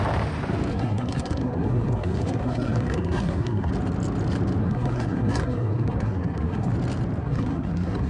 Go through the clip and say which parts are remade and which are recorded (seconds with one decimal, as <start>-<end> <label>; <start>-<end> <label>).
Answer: 0.0-0.7 recorded; 0.7-3.7 remade; 3.7-4.6 recorded; 4.6-6.7 remade; 6.7-7.2 recorded; 7.2-8.1 remade